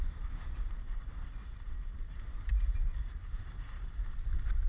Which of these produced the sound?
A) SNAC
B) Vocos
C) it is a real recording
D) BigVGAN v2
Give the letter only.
D